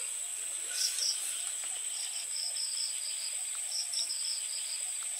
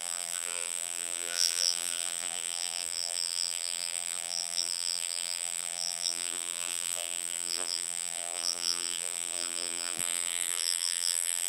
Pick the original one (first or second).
first